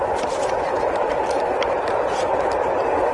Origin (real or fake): real